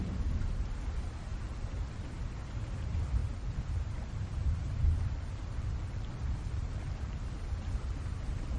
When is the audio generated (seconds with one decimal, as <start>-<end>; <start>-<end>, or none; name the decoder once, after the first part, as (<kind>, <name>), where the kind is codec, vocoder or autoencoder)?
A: 1.3-1.8 (vocoder, BigVGAN v2); 3.2-7.3